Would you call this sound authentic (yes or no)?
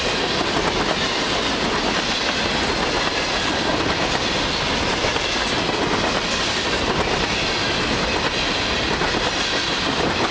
yes